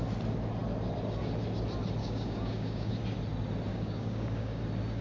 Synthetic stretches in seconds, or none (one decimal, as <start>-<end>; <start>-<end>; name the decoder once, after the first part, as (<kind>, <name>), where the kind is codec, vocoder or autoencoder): 2.0-2.9 (codec, DAC); 3.7-4.6